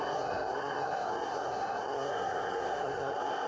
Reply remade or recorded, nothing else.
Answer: remade